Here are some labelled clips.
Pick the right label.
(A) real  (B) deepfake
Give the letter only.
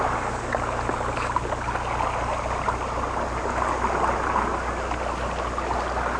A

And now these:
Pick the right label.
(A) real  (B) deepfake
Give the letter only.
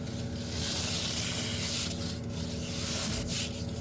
A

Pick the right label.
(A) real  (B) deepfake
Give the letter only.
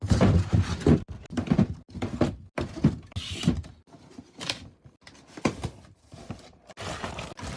A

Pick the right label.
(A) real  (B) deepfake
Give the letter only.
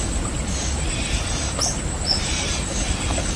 A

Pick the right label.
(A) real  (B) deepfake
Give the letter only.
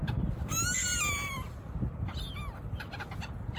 A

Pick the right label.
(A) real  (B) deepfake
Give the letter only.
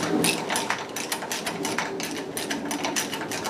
A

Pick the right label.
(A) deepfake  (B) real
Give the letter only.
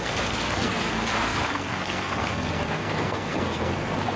A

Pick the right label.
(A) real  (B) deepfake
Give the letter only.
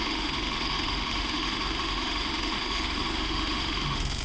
B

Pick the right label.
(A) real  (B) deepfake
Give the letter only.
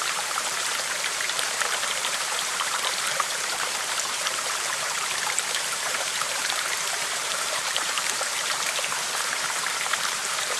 B